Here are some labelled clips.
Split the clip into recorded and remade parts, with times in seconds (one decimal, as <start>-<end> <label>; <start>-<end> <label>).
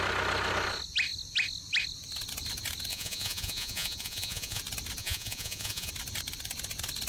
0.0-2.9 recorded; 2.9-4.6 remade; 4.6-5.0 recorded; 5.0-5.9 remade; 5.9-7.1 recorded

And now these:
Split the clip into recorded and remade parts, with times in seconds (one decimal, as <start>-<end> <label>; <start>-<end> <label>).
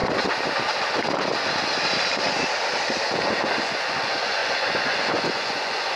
0.0-3.6 recorded; 3.6-6.0 remade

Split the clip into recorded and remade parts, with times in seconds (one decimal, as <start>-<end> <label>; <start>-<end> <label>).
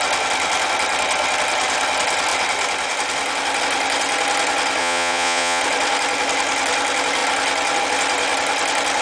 0.0-4.8 recorded; 4.8-5.6 remade; 5.6-9.0 recorded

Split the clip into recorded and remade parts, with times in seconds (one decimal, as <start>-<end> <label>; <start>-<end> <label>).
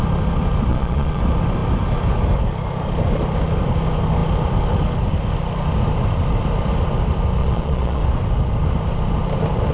0.0-0.7 recorded; 0.7-1.2 remade; 1.2-7.4 recorded; 7.4-8.0 remade; 8.0-9.7 recorded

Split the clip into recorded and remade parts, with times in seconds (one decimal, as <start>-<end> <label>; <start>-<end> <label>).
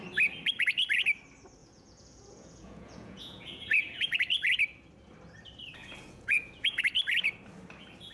0.0-1.6 recorded; 1.6-4.1 remade; 4.1-5.8 recorded; 5.8-6.8 remade; 6.8-8.1 recorded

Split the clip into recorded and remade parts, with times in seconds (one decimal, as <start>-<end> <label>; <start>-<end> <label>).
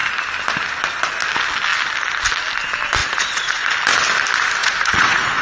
0.0-3.0 recorded; 3.0-3.7 remade; 3.7-4.6 recorded; 4.6-5.4 remade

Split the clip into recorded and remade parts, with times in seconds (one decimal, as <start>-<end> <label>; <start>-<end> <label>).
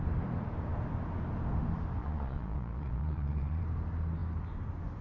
0.0-2.0 recorded; 2.0-3.6 remade; 3.6-5.0 recorded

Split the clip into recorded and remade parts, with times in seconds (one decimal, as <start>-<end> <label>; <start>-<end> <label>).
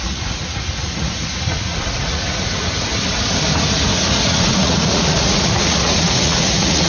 0.0-2.9 remade; 2.9-3.9 recorded; 3.9-6.9 remade